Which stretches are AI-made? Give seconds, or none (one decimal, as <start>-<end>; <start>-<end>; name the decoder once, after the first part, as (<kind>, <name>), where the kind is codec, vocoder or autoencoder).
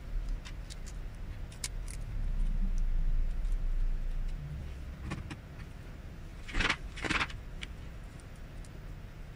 6.3-8.4 (vocoder, BigVGAN v2)